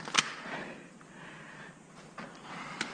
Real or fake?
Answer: real